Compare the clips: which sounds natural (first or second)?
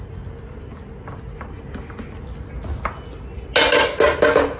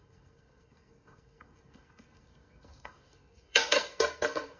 first